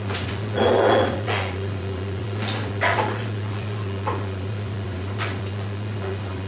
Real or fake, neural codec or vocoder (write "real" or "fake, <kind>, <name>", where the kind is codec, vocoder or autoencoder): fake, vocoder, Vocos